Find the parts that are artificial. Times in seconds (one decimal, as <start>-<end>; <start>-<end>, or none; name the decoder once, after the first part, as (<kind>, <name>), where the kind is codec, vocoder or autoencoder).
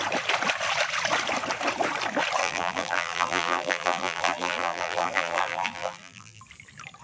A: 2.4-6.4 (vocoder, BigVGAN v2)